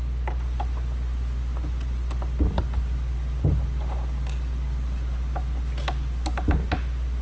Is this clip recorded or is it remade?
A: recorded